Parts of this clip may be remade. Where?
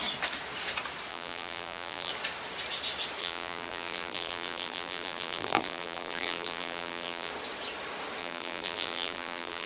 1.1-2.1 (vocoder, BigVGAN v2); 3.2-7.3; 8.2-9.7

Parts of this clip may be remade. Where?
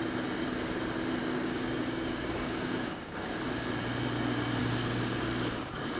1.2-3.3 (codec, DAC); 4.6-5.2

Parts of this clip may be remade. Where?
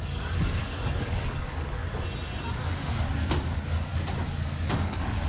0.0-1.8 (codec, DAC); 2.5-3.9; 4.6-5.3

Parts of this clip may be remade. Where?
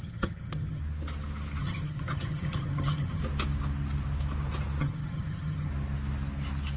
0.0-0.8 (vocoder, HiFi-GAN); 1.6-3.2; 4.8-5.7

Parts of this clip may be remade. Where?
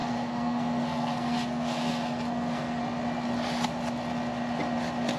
0.0-2.8 (codec, SNAC)